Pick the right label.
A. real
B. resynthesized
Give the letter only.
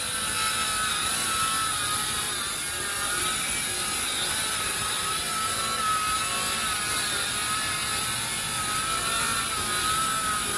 A